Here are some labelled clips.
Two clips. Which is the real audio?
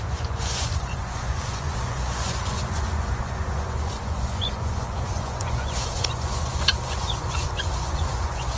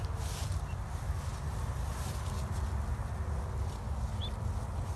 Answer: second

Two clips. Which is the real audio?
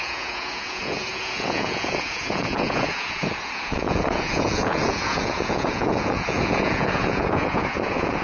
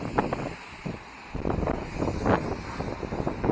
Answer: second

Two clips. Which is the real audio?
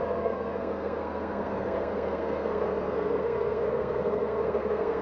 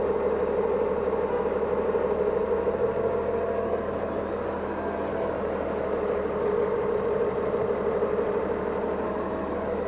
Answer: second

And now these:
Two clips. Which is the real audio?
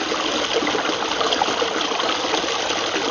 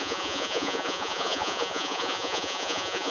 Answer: first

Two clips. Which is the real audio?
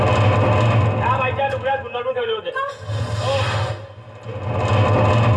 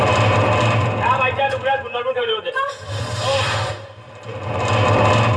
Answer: first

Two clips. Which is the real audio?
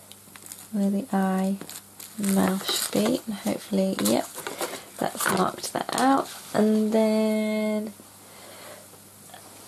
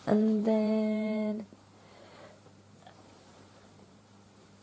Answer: first